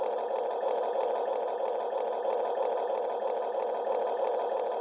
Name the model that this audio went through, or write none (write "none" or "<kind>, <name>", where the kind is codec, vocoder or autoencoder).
none